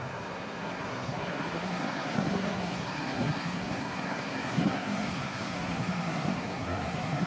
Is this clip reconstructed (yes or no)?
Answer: yes